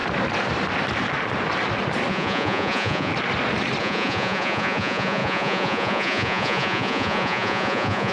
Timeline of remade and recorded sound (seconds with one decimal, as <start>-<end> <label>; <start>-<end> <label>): 0.0-2.1 recorded; 2.1-3.1 remade; 3.1-3.8 recorded; 3.8-8.1 remade